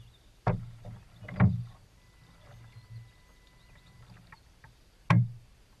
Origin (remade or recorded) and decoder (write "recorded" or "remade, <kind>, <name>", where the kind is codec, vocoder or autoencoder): recorded